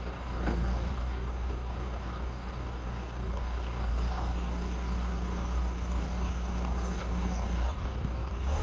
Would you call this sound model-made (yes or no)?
yes